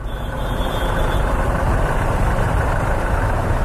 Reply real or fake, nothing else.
fake